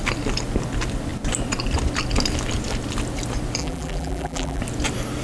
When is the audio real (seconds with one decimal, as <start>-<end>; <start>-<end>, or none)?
0.0-3.6; 4.6-5.2